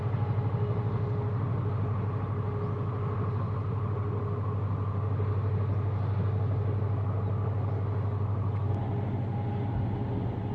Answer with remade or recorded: recorded